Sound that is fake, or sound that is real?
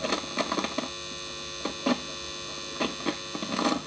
real